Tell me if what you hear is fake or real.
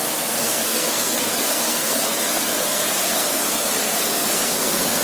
fake